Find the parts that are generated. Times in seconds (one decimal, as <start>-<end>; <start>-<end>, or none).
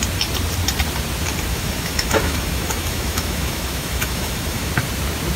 1.5-4.7